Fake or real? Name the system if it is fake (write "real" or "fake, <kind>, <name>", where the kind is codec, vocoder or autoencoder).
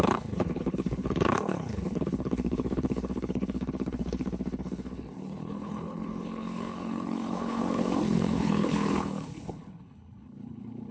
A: fake, codec, HILCodec